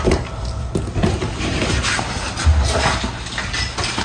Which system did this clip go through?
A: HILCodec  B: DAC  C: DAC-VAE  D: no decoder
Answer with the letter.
D